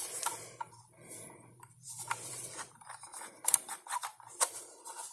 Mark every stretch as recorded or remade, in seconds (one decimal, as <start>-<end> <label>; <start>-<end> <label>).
0.0-5.1 remade